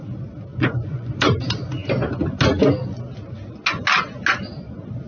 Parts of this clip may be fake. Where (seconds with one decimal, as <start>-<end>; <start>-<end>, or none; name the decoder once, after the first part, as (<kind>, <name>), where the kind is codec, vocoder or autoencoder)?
0.5-1.1 (vocoder, Vocos)